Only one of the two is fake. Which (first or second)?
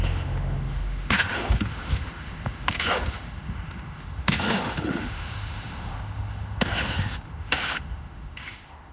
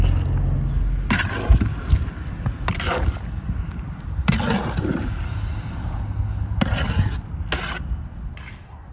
first